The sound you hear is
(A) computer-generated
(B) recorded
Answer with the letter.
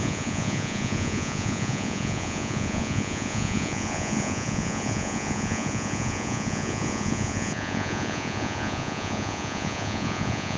A